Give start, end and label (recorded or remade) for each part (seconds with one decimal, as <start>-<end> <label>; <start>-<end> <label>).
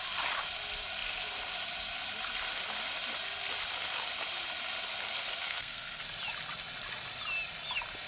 0.0-5.4 recorded; 5.4-6.0 remade; 6.0-8.1 recorded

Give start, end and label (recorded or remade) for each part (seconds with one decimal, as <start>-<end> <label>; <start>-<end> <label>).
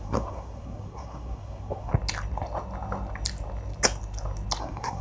0.0-1.9 remade; 1.9-4.6 recorded; 4.6-5.0 remade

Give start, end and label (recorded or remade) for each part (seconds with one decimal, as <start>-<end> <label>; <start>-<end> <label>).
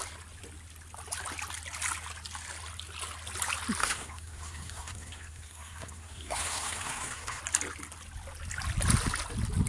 0.0-3.8 recorded; 3.8-7.4 remade; 7.4-9.7 recorded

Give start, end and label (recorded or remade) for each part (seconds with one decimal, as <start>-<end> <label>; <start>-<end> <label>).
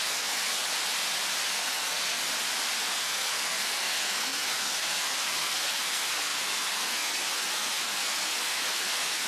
0.0-0.6 remade; 0.6-1.5 recorded; 1.5-2.2 remade; 2.2-2.8 recorded; 2.8-9.3 remade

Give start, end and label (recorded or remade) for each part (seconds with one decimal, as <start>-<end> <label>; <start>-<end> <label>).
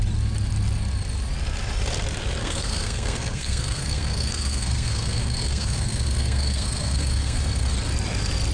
0.0-2.4 recorded; 2.4-7.4 remade; 7.4-8.5 recorded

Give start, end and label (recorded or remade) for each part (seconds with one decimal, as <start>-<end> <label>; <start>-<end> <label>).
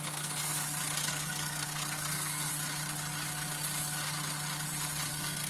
0.0-0.5 remade; 0.5-1.1 recorded; 1.1-2.5 remade; 2.5-5.1 recorded; 5.1-5.5 remade